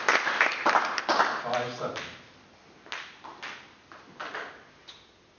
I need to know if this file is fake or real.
real